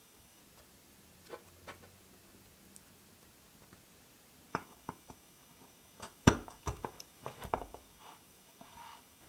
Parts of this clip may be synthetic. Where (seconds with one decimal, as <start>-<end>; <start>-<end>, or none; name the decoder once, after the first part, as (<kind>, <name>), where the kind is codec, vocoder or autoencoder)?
0.0-0.4 (codec, DAC); 4.5-9.3